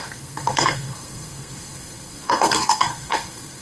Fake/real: fake